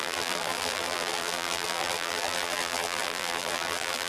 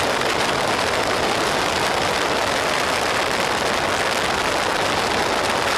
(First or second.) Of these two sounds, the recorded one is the second